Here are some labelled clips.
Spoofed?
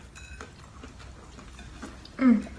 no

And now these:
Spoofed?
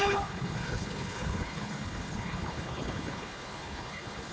yes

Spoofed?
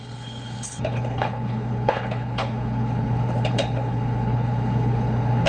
yes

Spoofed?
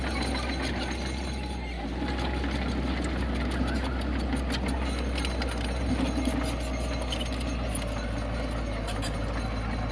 no